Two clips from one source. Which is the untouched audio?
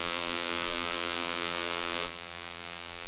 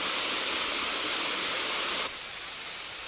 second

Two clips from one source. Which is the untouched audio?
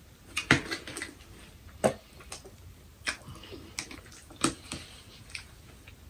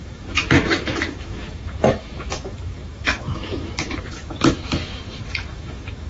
first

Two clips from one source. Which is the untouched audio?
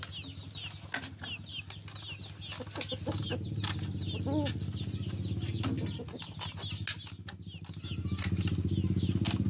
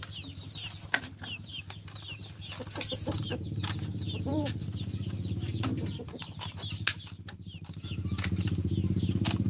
first